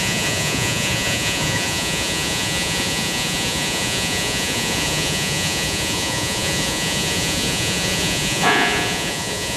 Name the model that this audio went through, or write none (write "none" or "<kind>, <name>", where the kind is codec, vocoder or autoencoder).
vocoder, Vocos